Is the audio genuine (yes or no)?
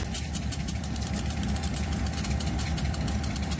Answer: yes